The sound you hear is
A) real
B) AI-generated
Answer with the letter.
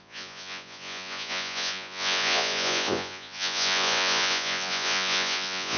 B